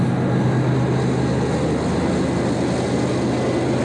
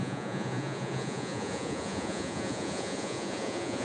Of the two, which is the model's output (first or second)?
second